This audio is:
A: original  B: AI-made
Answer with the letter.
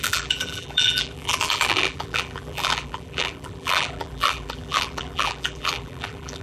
B